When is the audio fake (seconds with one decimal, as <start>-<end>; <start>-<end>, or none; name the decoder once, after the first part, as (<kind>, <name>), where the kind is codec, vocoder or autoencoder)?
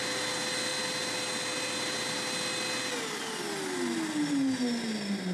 none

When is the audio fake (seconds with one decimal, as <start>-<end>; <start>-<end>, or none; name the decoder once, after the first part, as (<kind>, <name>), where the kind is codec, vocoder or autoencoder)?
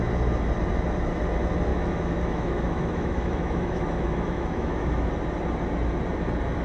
1.7-5.1 (autoencoder, DAC-VAE)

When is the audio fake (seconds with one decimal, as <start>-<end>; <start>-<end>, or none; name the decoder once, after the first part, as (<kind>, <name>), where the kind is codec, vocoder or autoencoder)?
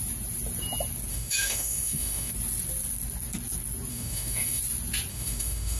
1.1-2.3 (autoencoder, DAC-VAE); 3.9-4.6; 5.1-5.8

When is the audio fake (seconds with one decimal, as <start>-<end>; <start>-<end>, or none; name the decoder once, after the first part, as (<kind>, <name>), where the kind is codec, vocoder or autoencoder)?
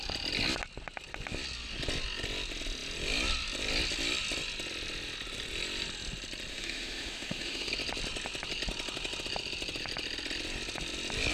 6.5-7.7 (autoencoder, DAC-VAE)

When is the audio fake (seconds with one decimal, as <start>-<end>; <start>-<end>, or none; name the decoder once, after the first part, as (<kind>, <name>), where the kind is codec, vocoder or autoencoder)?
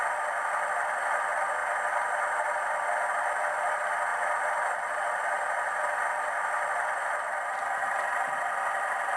none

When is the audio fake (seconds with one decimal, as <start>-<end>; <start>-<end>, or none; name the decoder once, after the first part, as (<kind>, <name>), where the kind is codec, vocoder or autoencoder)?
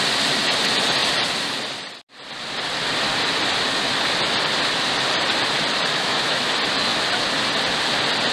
5.9-6.5 (autoencoder, DAC-VAE)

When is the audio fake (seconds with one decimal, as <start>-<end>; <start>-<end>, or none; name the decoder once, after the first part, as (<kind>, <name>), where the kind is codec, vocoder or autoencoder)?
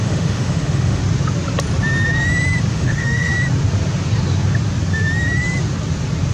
0.0-1.0 (autoencoder, DAC-VAE); 2.7-3.3